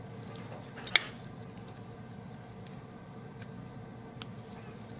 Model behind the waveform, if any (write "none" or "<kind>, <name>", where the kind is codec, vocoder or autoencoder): none